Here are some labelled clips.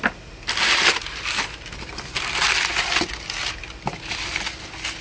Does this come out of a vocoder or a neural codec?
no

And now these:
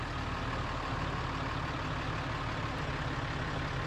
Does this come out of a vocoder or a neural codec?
no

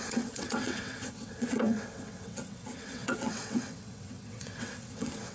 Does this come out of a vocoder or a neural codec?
yes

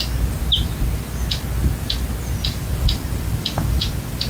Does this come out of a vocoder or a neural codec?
no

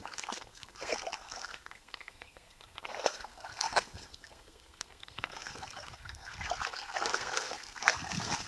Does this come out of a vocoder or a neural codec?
yes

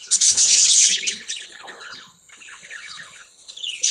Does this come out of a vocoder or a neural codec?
yes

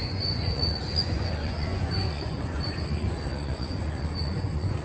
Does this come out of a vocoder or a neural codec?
yes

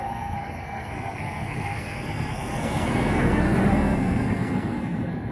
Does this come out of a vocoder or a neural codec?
yes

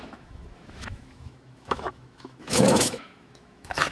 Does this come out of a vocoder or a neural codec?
yes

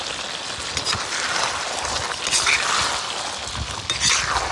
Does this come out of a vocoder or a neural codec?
no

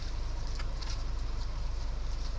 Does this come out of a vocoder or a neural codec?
yes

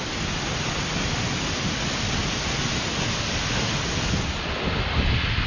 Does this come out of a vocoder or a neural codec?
no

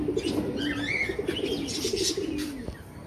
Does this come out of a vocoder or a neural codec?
no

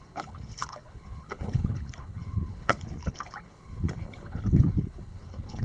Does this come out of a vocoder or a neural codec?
yes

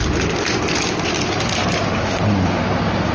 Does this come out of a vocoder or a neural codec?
no